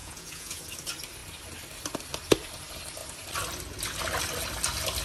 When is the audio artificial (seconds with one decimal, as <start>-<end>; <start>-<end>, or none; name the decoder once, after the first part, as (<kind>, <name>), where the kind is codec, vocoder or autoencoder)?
0.0-0.6 (vocoder, Vocos)